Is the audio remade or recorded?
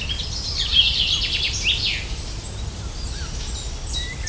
recorded